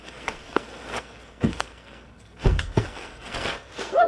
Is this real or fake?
fake